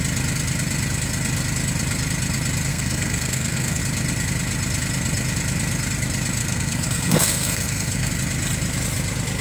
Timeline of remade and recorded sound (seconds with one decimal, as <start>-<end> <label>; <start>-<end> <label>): 0.0-2.7 recorded; 2.7-3.8 remade; 3.8-6.4 recorded; 6.4-8.1 remade; 8.1-9.4 recorded